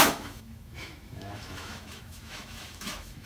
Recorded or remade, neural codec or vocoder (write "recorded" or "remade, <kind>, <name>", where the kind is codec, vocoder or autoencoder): remade, autoencoder, DAC-VAE